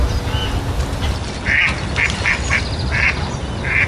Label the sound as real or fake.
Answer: real